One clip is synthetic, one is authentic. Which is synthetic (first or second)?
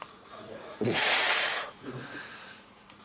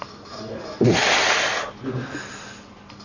first